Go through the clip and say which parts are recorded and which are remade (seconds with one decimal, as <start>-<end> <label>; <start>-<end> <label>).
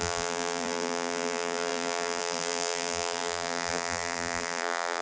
0.0-5.0 remade